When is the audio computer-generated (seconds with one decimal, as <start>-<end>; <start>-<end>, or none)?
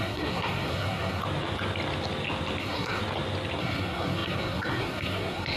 0.0-1.2; 2.6-3.0; 3.6-5.6